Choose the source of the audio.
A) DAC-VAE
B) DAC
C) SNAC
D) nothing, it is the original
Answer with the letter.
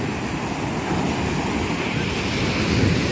D